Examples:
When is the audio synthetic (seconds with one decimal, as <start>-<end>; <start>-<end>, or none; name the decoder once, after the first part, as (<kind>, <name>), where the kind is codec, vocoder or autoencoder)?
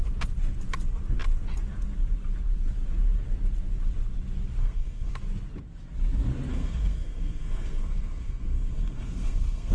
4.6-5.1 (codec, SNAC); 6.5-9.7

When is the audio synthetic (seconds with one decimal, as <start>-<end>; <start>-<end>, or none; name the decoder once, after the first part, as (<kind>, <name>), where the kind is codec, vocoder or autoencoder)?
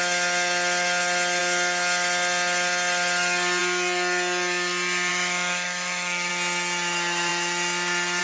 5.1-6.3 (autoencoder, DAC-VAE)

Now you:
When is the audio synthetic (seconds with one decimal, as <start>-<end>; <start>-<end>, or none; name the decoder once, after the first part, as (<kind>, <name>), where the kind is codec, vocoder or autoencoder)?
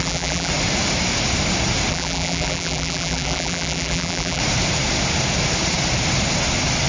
0.0-0.5 (vocoder, BigVGAN v2); 1.9-4.4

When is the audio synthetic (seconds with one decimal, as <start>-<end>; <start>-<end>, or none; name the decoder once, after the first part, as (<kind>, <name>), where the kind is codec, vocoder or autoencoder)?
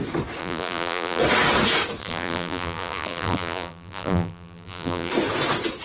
0.4-1.2 (vocoder, BigVGAN v2); 2.0-5.1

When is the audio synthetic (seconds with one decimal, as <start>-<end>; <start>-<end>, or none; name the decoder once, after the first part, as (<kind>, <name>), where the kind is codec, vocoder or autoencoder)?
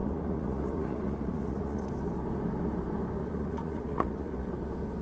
0.0-1.9 (vocoder, Vocos); 3.2-4.5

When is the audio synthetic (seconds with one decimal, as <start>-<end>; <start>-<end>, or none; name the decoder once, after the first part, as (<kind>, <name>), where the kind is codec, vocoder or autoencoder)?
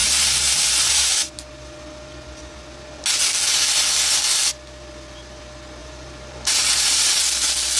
0.0-1.1 (vocoder, BigVGAN v2); 5.8-7.1